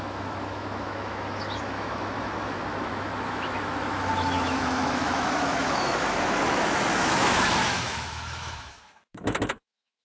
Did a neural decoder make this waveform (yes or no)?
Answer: yes